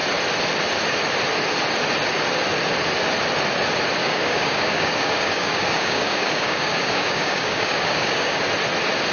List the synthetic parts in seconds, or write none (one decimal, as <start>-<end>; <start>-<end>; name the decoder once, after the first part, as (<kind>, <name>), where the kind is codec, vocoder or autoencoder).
4.0-8.4 (codec, DAC)